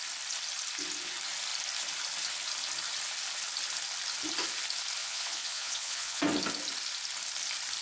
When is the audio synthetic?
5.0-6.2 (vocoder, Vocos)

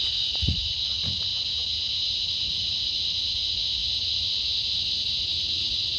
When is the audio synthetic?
0.0-1.3 (vocoder, Vocos); 2.1-6.0

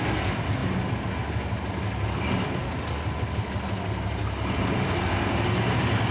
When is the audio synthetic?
none

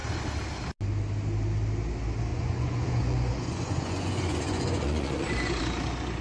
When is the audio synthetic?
2.3-5.6 (vocoder, Vocos)

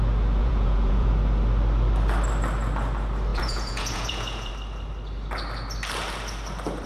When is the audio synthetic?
0.4-1.1 (vocoder, Vocos); 3.3-4.5

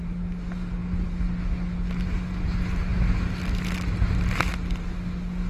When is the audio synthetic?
none

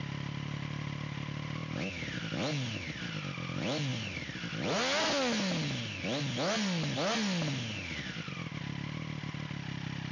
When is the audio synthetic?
none

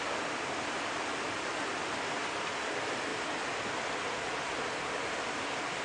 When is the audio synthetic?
none